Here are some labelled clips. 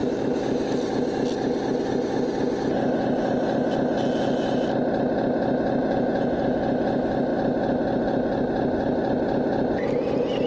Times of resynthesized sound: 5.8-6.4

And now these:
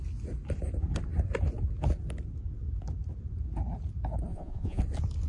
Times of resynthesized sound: 4.3-4.8

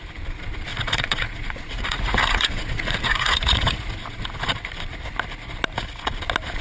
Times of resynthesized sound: 0.7-4.7

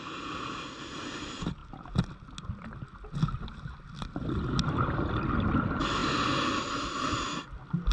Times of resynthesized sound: none

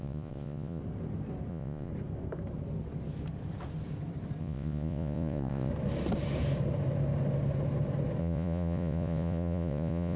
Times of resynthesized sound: 0.0-0.8; 1.5-1.9; 4.4-5.7; 8.2-10.2

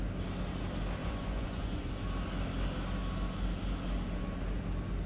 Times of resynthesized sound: 1.0-1.9

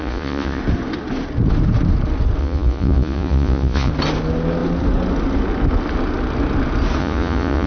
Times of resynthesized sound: 0.0-0.6; 2.4-3.9; 7.0-7.7

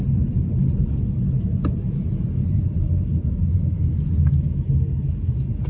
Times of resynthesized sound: 0.6-4.0